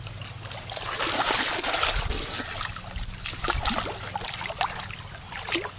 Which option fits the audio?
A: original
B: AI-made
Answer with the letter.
A